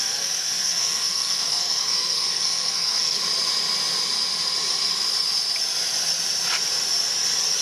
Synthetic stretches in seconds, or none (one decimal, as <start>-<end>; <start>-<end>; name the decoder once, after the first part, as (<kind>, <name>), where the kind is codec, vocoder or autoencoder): 0.0-3.2 (codec, SNAC)